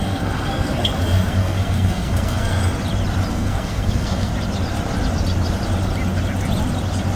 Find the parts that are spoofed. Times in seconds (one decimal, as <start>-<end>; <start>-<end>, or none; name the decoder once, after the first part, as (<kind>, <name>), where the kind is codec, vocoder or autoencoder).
0.0-2.6 (codec, SNAC); 3.3-4.3

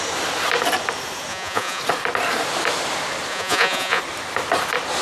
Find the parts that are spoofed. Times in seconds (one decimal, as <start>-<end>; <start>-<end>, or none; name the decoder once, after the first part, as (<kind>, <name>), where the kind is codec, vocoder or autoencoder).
1.3-1.8 (vocoder, Vocos); 3.3-4.0

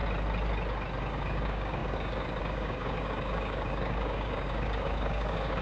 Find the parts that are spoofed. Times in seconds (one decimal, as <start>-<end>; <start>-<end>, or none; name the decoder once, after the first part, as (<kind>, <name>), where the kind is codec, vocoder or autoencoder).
1.0-5.6 (codec, DAC)

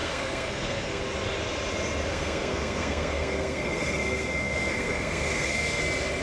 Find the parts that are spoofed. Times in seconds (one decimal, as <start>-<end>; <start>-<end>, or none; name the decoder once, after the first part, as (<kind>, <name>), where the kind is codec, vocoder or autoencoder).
0.0-1.0 (codec, SNAC); 2.1-5.8

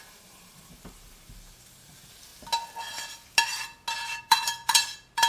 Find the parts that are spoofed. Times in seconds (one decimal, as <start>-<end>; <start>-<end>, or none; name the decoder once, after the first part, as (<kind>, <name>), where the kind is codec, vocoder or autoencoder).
0.0-2.3 (vocoder, BigVGAN v2); 4.2-5.3

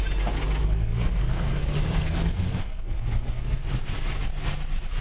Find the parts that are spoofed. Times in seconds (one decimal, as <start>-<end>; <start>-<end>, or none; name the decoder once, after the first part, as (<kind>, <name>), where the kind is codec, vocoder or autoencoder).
0.6-3.6 (codec, SNAC)